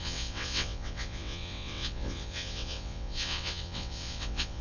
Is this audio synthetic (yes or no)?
yes